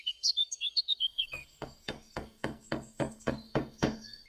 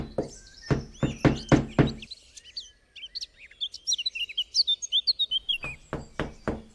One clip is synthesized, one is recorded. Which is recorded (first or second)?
second